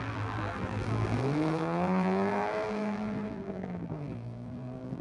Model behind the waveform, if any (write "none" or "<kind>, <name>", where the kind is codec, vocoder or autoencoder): vocoder, BigVGAN v2